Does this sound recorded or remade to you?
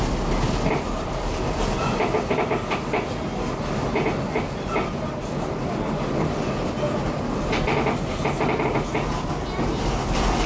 recorded